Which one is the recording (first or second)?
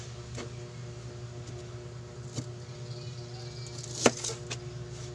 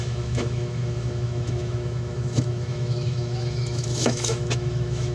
first